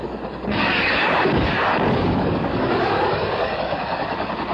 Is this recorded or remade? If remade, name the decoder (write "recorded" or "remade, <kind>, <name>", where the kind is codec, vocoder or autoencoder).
remade, codec, DAC